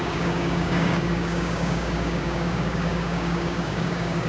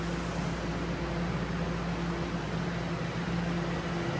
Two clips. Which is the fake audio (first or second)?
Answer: first